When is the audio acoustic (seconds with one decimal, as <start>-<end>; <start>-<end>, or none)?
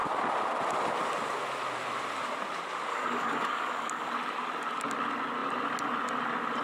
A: 0.0-2.9; 4.1-6.6